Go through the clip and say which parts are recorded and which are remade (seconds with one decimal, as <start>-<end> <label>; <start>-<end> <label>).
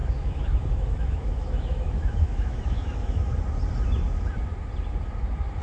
0.0-3.4 remade; 3.4-5.6 recorded